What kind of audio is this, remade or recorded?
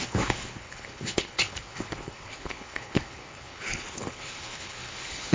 remade